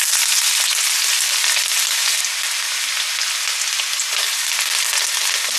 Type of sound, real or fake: real